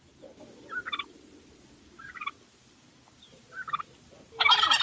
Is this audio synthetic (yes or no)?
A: no